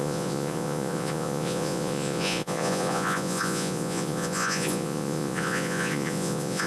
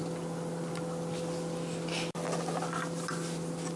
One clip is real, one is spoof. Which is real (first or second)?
second